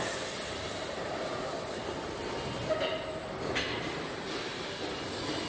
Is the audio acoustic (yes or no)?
yes